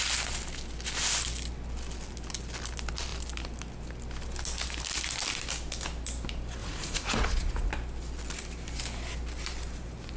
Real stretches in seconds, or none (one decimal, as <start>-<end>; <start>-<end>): 0.0-6.6; 7.7-10.2